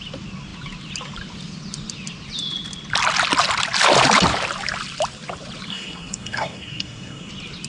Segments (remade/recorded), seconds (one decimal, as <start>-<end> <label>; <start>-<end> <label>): 0.0-5.7 recorded; 5.7-7.3 remade; 7.3-7.7 recorded